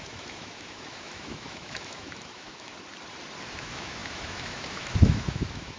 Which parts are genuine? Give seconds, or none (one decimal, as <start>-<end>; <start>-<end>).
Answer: 2.7-3.5